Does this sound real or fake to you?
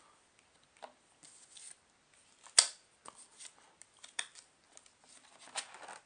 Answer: real